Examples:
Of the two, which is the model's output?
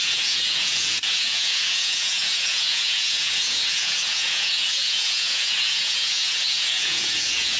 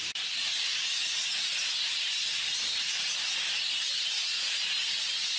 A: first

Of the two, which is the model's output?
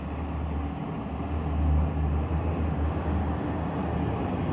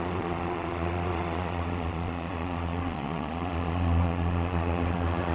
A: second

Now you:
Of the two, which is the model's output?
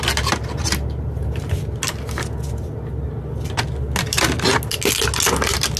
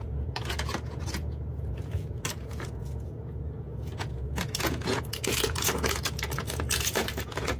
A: second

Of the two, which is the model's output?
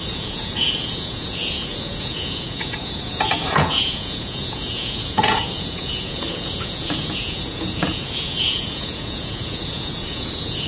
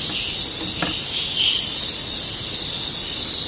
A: first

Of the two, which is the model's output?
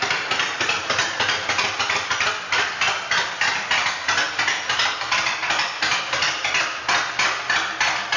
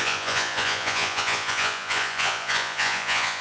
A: second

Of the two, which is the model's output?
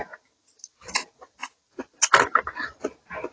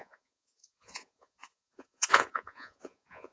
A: second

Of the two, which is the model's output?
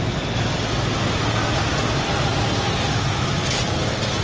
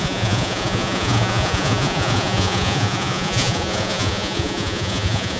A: second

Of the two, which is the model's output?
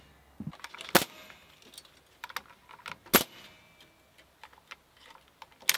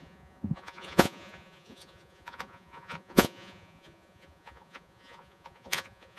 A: second